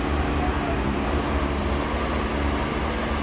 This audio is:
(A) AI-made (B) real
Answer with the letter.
B